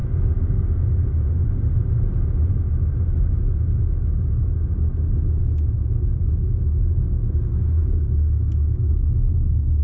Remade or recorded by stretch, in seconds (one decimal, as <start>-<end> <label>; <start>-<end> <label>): 0.0-0.6 remade; 0.6-5.4 recorded; 5.4-6.8 remade; 6.8-7.8 recorded; 7.8-9.8 remade